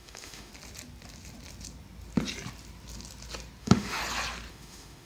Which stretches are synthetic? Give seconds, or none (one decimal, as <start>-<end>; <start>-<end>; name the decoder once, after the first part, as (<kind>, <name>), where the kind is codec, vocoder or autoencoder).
0.0-0.5 (autoencoder, DAC-VAE); 3.6-4.0; 4.5-5.1